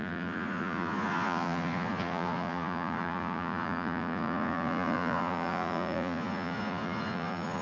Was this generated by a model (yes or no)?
yes